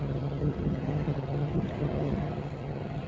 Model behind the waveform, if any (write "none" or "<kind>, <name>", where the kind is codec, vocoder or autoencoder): vocoder, HiFi-GAN